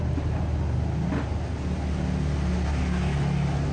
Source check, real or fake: real